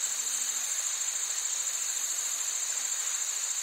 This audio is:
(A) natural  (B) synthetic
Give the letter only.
A